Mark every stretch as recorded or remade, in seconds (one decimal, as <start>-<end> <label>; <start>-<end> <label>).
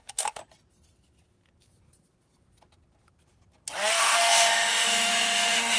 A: 0.0-0.4 remade; 0.4-3.9 recorded; 3.9-5.8 remade